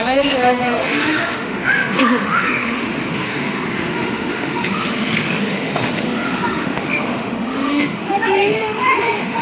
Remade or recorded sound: remade